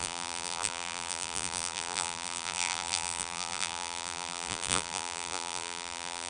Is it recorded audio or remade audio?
remade